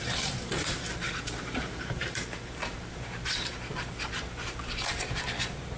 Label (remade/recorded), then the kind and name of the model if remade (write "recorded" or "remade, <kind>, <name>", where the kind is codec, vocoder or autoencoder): remade, vocoder, BigVGAN v2